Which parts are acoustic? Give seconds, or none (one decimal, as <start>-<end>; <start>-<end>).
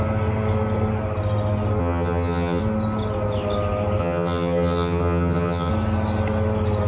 0.0-1.8; 2.6-4.0; 5.7-6.9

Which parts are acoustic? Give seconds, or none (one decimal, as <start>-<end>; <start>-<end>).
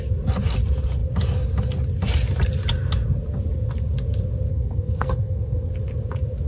0.0-4.5; 5.7-6.5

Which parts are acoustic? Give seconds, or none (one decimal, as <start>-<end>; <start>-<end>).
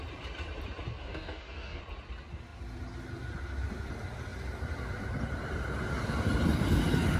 0.0-1.0; 1.8-7.2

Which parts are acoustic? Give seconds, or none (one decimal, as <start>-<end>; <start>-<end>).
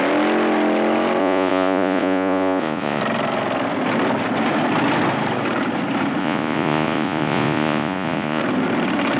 0.0-1.2; 3.0-6.2; 8.4-9.2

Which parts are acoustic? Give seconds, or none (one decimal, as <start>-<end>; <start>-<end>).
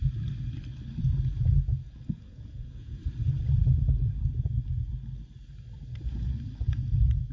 0.0-1.7; 3.0-7.3